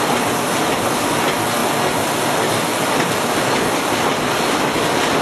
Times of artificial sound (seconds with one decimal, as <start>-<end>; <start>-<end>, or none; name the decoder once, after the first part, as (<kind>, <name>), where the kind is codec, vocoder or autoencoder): none